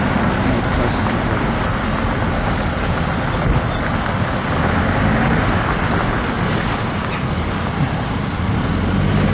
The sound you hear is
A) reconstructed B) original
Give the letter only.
B